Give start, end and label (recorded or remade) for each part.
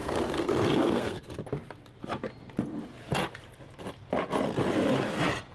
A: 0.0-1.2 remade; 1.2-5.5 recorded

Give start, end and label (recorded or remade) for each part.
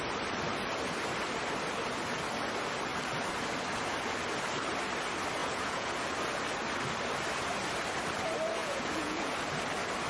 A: 0.0-5.4 recorded; 5.4-5.9 remade; 5.9-8.6 recorded; 8.6-9.3 remade; 9.3-10.1 recorded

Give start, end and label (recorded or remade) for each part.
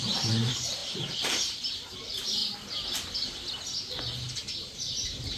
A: 0.0-2.4 remade; 2.4-4.5 recorded; 4.5-5.4 remade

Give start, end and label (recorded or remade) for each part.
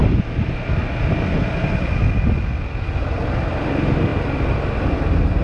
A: 0.0-5.4 recorded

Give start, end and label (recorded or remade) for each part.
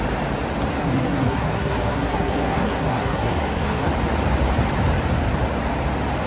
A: 0.0-0.7 recorded; 0.7-3.9 remade; 3.9-6.3 recorded